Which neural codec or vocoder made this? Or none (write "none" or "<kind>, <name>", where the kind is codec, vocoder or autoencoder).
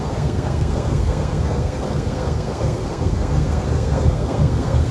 codec, SNAC